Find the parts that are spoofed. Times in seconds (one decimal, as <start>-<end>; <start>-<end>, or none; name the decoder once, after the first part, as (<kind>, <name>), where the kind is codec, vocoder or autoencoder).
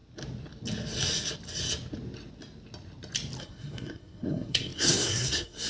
3.4-5.7 (codec, SNAC)